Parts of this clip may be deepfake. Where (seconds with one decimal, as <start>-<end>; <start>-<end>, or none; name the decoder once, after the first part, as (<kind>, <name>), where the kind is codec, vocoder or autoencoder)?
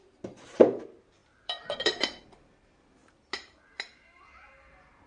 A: 1.2-2.2 (vocoder, BigVGAN v2)